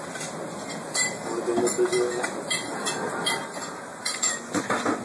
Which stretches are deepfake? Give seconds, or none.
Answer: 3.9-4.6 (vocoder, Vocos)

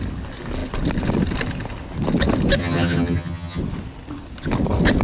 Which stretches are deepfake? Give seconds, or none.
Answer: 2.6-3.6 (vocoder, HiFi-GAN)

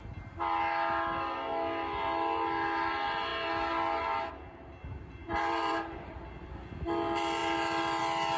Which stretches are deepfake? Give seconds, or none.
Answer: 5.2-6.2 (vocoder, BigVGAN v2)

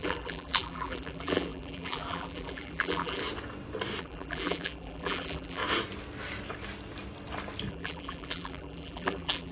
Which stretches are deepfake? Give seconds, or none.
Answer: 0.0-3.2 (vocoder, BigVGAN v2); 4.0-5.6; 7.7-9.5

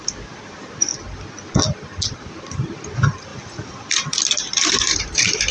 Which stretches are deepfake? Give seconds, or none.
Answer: 0.0-0.9 (vocoder, BigVGAN v2); 2.2-3.3; 4.2-5.5